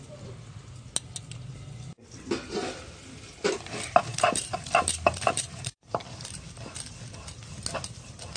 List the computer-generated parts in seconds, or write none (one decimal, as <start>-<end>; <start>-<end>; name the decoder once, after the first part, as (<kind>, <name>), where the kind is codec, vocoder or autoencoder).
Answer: 4.1-6.8 (vocoder, BigVGAN v2)